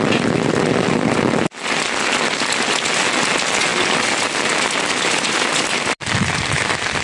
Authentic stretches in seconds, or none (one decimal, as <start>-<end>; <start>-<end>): 0.0-7.0